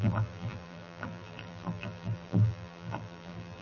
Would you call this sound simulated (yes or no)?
yes